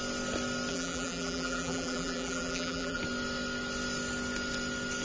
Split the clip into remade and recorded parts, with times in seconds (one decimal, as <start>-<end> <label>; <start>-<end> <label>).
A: 0.0-0.7 recorded; 0.7-3.0 remade; 3.0-5.0 recorded